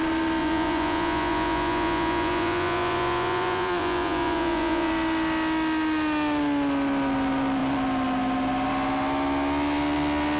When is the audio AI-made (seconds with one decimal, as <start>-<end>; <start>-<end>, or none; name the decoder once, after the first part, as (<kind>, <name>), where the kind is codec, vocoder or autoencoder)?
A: 0.4-4.9 (vocoder, Vocos)